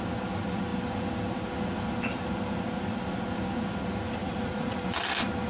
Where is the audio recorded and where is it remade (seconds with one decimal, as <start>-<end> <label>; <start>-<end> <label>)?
0.0-4.2 recorded; 4.2-4.8 remade; 4.8-5.5 recorded